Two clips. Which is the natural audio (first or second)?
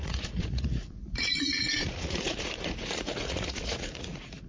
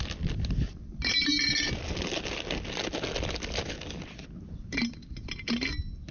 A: second